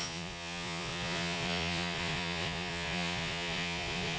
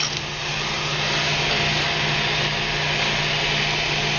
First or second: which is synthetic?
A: first